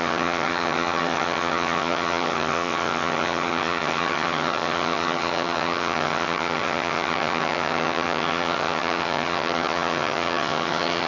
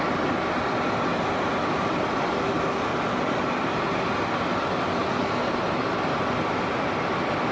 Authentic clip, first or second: second